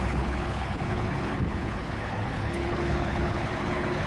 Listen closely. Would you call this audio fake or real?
fake